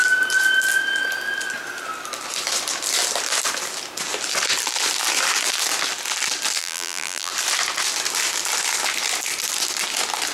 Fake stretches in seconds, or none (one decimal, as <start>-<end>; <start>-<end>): 6.6-7.3